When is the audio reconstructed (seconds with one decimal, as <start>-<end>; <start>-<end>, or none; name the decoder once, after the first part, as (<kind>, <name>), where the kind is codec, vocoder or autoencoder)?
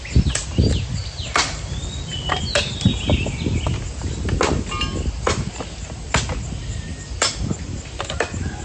1.0-2.3 (vocoder, BigVGAN v2)